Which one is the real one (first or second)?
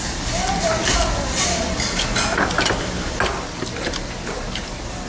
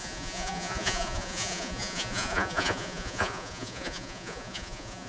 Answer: first